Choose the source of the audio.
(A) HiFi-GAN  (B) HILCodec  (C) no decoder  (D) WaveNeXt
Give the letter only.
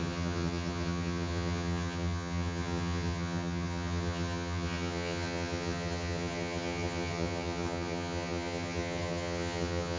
A